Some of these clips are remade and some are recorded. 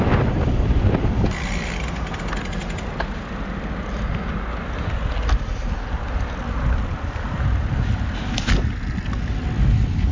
recorded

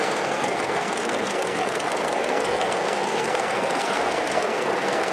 remade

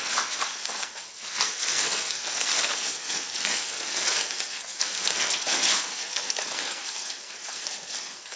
remade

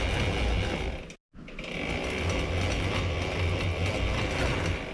recorded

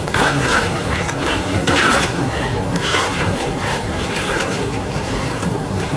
remade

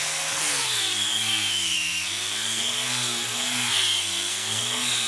remade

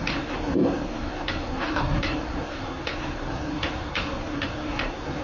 remade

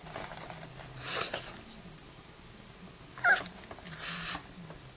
recorded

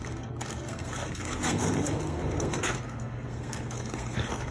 remade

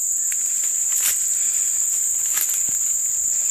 recorded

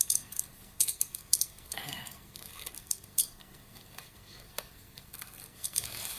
remade